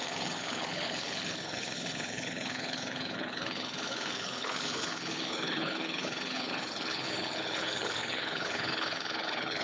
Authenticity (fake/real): fake